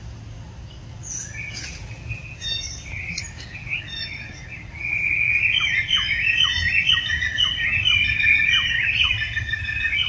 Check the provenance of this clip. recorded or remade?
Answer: recorded